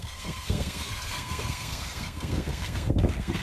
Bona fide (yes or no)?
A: no